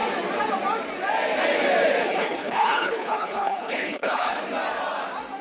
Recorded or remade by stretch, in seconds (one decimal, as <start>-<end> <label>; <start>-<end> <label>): 0.0-2.0 recorded; 2.0-4.4 remade; 4.4-5.4 recorded